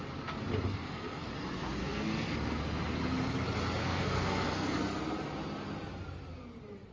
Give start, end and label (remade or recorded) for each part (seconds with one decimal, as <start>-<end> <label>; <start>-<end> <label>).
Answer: 0.0-0.7 recorded; 0.7-1.3 remade; 1.3-1.8 recorded; 1.8-2.6 remade; 2.6-3.8 recorded; 3.8-4.8 remade; 4.8-6.9 recorded